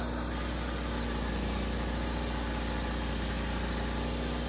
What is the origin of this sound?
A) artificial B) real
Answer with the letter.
B